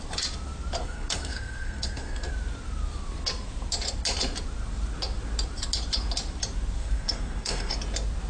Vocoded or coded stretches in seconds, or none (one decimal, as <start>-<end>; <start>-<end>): 0.8-2.3; 6.8-7.7